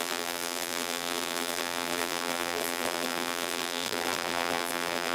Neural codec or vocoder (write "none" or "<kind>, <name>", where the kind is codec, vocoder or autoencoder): vocoder, BigVGAN v2